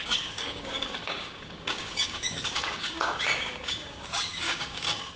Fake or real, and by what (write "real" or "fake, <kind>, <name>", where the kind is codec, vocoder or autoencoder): fake, codec, DAC